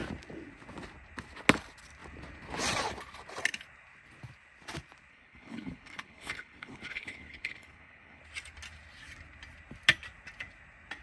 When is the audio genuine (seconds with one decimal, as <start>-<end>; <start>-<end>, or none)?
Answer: 0.0-5.1; 8.2-11.0